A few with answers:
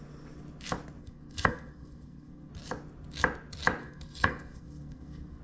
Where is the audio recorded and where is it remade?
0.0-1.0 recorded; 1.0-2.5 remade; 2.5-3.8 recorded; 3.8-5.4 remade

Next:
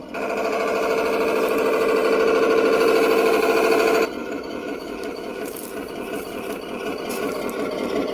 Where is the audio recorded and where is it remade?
0.0-4.2 recorded; 4.2-5.6 remade; 5.6-8.1 recorded

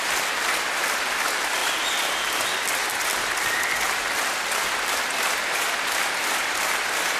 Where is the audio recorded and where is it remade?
0.0-7.2 recorded

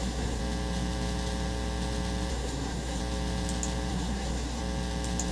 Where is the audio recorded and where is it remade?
0.0-0.4 remade; 0.4-2.3 recorded; 2.3-3.0 remade; 3.0-3.9 recorded; 3.9-4.6 remade; 4.6-5.3 recorded

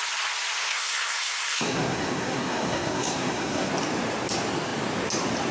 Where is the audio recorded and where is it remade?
0.0-0.6 recorded; 0.6-3.7 remade; 3.7-5.5 recorded

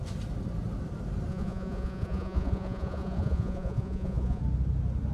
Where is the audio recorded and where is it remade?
0.0-1.3 recorded; 1.3-4.4 remade; 4.4-5.1 recorded